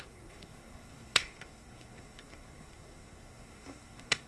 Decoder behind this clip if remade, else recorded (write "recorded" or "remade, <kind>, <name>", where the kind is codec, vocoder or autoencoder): remade, codec, SNAC